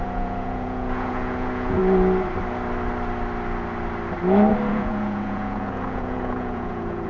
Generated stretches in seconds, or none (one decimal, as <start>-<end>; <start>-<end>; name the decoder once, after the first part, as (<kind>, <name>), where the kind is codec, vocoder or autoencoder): 0.0-1.8 (vocoder, Vocos); 4.7-7.1